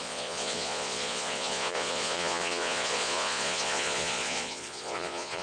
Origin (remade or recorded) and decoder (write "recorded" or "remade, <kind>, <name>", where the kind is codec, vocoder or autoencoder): remade, vocoder, Vocos